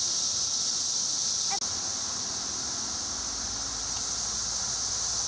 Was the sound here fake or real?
real